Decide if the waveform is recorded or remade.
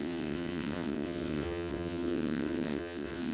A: remade